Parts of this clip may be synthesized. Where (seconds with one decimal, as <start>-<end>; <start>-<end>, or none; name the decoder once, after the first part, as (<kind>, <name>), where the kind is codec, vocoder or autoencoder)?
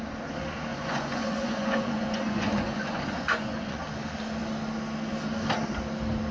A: 0.7-3.8 (vocoder, Vocos)